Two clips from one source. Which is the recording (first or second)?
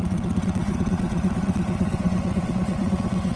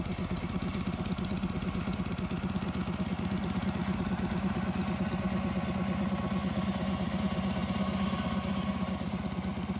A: second